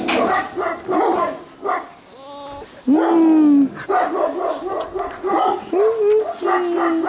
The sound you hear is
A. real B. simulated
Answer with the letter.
A